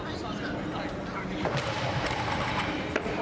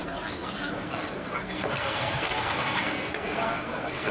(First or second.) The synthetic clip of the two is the second